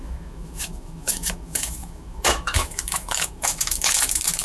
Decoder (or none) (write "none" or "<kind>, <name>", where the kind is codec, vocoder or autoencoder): autoencoder, DAC-VAE